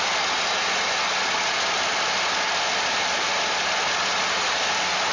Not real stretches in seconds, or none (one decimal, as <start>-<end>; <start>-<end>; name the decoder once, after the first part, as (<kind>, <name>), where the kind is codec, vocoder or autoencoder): none